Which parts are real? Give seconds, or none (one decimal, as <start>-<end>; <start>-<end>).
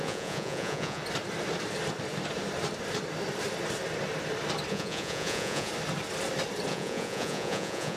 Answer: 1.0-4.7; 5.7-6.7